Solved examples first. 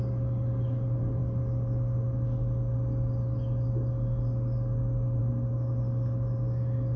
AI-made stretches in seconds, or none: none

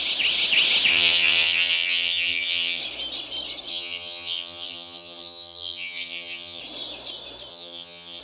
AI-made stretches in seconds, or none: 0.9-2.8 (vocoder, HiFi-GAN); 3.7-6.6; 7.5-8.2